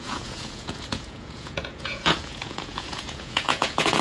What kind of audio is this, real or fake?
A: fake